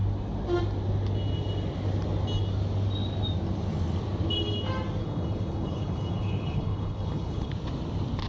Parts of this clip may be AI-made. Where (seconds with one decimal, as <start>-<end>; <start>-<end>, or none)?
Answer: 5.0-7.5